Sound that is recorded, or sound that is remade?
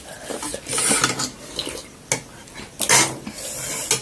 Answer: recorded